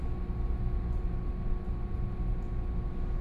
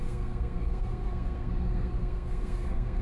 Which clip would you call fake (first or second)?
second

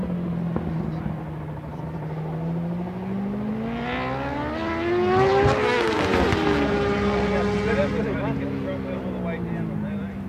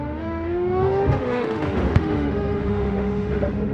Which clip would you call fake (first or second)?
second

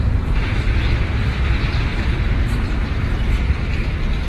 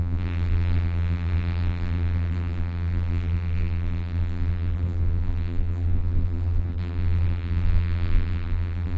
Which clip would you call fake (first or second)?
second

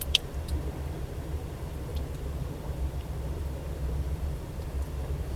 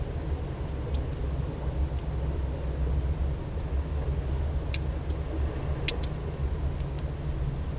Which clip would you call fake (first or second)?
first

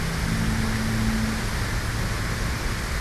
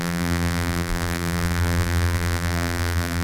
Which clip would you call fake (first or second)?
second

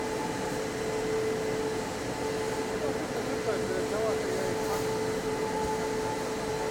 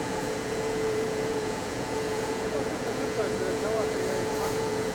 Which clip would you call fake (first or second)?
second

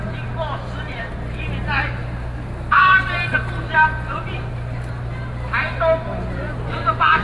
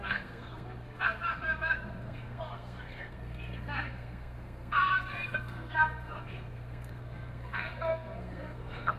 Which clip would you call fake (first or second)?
second